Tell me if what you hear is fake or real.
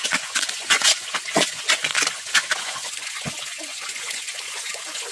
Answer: fake